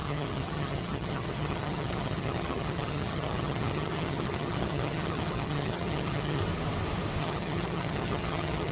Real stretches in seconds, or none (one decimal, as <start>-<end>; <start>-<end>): 6.4-7.2